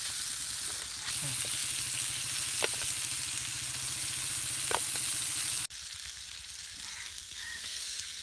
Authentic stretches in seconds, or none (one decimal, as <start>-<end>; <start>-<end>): 0.0-6.9